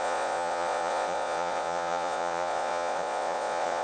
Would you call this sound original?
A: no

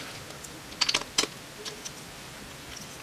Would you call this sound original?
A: yes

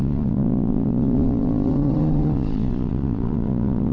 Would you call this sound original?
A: no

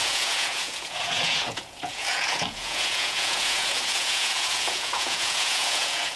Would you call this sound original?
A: no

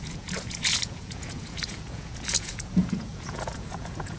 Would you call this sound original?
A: no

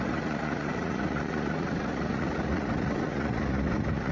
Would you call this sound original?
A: no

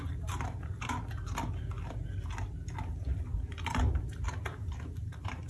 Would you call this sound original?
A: yes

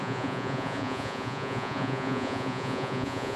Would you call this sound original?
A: no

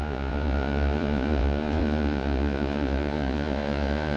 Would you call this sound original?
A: no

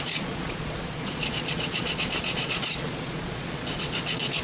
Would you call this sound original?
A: no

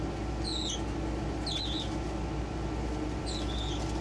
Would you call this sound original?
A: yes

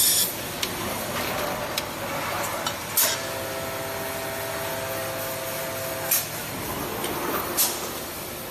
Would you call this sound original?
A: yes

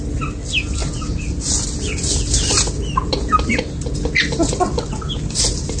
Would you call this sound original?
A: yes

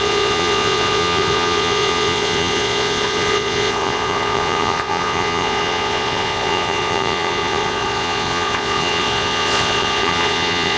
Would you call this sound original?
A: no